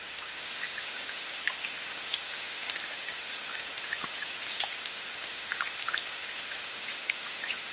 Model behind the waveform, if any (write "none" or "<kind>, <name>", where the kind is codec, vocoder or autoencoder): autoencoder, DAC-VAE